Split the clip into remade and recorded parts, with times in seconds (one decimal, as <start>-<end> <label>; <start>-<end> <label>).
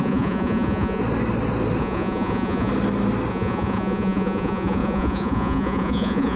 0.0-1.0 remade; 1.0-1.8 recorded; 1.8-2.7 remade; 2.7-3.3 recorded; 3.3-6.4 remade